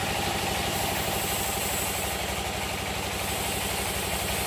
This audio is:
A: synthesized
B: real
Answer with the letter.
B